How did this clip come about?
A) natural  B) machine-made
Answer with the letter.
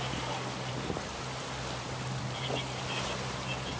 A